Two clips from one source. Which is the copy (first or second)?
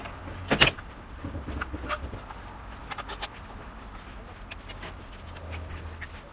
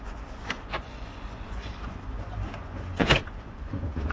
second